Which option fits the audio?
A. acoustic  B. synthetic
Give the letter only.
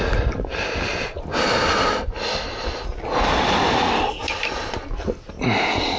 A